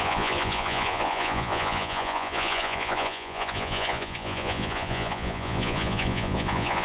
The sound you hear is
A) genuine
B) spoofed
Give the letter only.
B